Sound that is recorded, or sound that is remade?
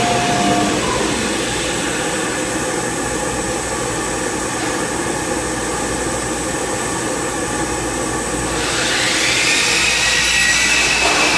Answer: recorded